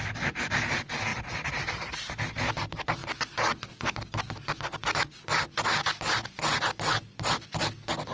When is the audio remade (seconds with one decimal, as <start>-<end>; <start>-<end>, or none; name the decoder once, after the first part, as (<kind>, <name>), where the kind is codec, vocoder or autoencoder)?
none